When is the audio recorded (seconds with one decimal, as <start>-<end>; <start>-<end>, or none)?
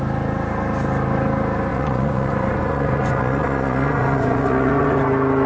0.0-1.7; 5.0-5.5